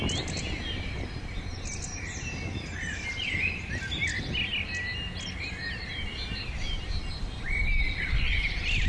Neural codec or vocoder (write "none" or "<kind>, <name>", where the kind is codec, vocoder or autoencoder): none